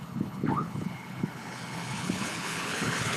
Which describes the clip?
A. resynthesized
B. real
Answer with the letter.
A